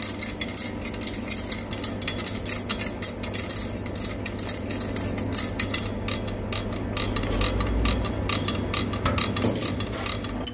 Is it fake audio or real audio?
real